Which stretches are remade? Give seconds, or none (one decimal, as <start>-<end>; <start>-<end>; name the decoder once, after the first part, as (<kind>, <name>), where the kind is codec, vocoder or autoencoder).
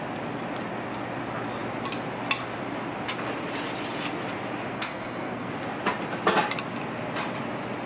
4.7-5.5 (codec, SNAC)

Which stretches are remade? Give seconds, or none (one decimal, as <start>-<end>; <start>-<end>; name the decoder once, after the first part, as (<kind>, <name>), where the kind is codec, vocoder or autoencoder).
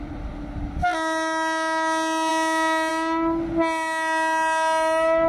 none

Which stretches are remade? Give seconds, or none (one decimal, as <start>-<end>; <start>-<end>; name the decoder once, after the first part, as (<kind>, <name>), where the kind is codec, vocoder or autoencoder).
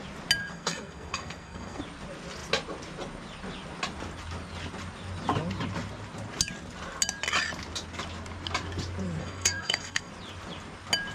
0.4-1.8 (codec, SNAC); 9.2-10.1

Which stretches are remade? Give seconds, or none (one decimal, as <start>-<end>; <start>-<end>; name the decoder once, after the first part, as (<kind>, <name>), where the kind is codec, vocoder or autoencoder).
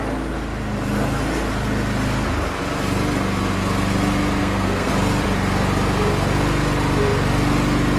4.4-4.9 (codec, SNAC)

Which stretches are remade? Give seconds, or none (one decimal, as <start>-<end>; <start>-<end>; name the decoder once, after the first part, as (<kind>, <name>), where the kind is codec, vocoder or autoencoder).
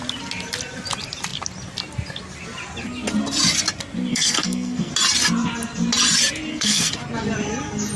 4.1-4.9 (codec, SNAC); 6.5-7.0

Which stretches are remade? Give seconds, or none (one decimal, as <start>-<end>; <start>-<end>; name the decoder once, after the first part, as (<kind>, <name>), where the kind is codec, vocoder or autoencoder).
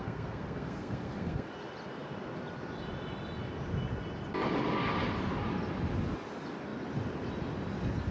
0.0-1.5 (codec, SNAC)